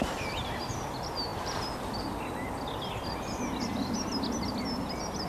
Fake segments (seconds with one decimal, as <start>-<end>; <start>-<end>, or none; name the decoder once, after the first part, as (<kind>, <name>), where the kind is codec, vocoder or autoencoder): none